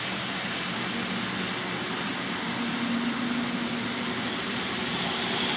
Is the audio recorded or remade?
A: recorded